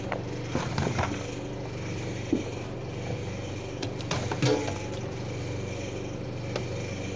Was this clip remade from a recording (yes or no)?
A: yes